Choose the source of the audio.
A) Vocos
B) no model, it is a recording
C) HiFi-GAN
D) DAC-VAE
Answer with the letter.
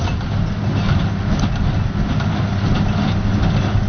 B